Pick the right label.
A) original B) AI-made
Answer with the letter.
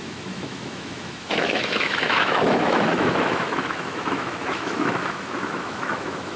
B